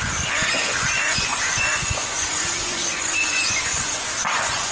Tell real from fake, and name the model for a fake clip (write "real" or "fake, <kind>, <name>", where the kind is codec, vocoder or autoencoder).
fake, vocoder, Vocos